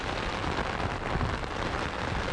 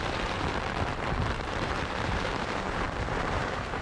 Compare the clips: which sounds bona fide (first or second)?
first